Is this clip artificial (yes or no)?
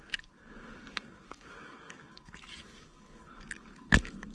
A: yes